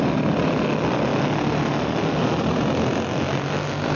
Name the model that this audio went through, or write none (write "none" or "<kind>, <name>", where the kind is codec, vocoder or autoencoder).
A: none